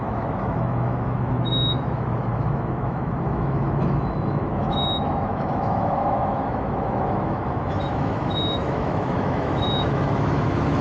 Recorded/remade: remade